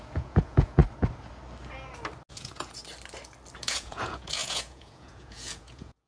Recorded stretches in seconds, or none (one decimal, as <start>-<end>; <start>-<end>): 0.8-2.3; 2.8-3.6